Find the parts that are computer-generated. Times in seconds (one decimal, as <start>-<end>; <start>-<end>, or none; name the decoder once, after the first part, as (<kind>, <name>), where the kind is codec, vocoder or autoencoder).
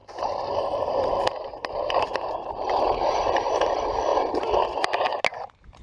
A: 0.0-3.5 (vocoder, BigVGAN v2)